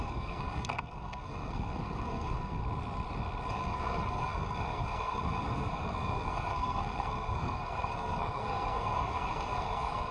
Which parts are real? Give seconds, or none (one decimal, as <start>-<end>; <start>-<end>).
2.6-3.5